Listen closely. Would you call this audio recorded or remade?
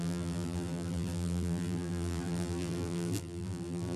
remade